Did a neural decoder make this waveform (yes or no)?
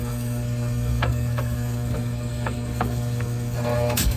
yes